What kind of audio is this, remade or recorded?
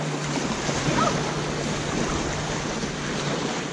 recorded